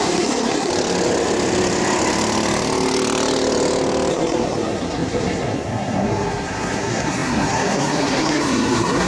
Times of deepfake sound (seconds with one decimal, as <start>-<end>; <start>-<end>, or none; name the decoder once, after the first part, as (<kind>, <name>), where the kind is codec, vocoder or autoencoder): 0.0-0.7 (codec, SNAC); 4.1-9.1